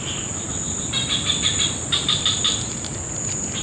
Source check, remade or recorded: recorded